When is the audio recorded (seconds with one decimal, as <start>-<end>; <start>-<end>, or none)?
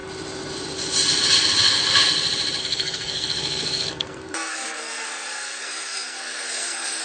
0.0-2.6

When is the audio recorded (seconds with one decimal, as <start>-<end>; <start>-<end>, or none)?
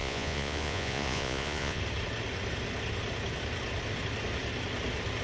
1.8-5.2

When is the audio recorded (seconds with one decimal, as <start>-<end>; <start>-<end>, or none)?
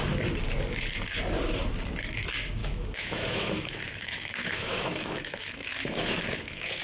0.0-2.6